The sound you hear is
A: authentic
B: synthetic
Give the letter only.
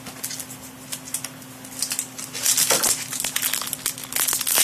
A